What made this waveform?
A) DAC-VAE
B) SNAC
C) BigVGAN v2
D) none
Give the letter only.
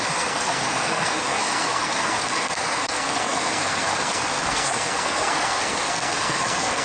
B